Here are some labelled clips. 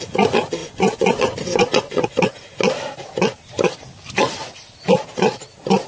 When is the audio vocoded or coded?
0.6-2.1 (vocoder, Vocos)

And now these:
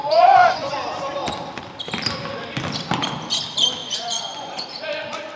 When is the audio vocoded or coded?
0.0-0.7 (vocoder, Vocos); 3.8-4.7